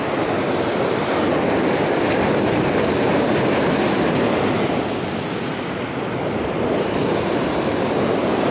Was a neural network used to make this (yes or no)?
no